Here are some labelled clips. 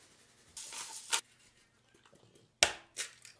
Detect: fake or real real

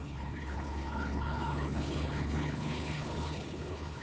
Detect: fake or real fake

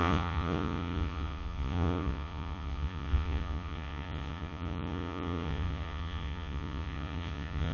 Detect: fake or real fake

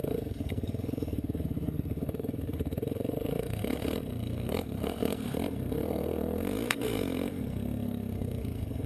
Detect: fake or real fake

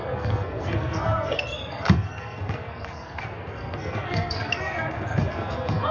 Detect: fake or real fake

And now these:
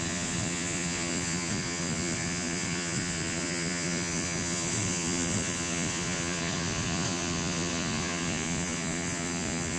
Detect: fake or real fake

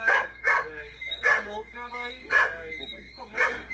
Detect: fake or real fake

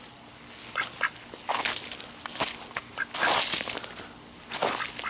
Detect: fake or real real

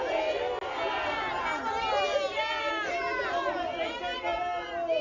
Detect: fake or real real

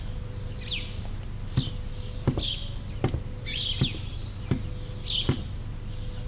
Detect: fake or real real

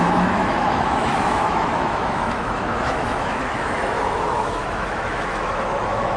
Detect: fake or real fake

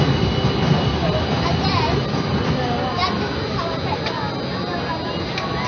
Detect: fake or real real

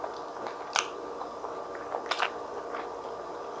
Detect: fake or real real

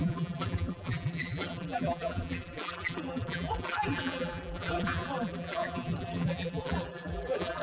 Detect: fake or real fake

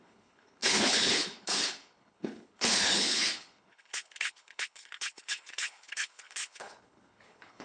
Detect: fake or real fake